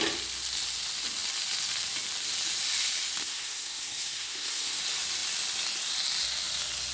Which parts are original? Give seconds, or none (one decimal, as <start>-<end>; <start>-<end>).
0.0-3.2; 4.8-6.9